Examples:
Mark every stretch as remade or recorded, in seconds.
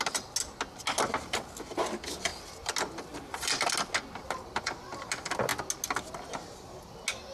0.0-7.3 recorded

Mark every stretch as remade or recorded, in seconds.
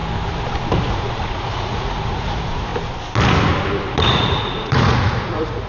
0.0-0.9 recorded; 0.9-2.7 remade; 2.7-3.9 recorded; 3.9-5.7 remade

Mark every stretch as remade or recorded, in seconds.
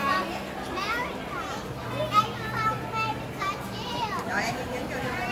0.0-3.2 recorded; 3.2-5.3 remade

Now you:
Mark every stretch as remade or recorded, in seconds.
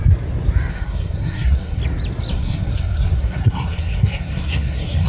0.0-0.7 recorded; 0.7-1.8 remade; 1.8-2.3 recorded; 2.3-5.1 remade